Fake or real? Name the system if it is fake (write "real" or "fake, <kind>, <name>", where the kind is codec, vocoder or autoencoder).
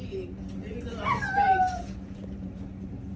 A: real